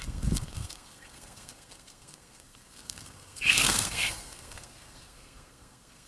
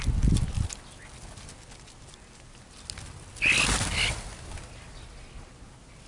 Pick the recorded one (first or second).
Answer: second